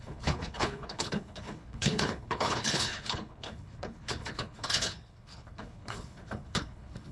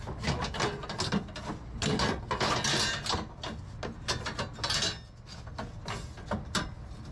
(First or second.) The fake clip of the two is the first